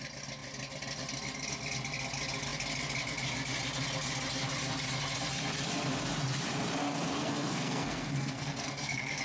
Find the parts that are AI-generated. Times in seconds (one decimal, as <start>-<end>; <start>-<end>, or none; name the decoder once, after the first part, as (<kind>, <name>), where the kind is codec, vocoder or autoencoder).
6.8-9.2 (codec, SNAC)

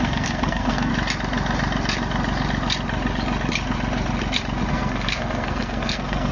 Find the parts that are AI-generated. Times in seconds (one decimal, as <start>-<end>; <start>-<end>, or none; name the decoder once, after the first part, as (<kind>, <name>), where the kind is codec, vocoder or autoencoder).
0.0-0.9 (codec, SNAC); 4.7-6.3